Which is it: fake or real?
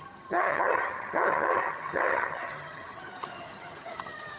fake